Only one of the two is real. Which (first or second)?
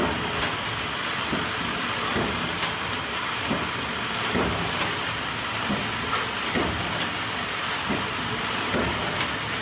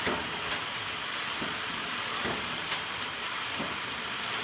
first